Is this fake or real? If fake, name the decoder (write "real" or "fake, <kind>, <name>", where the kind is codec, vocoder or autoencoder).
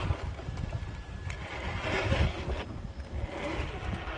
real